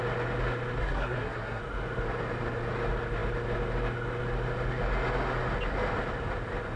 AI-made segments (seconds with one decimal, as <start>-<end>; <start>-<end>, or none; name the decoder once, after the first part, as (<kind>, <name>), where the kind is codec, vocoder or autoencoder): 0.8-1.6 (codec, SNAC)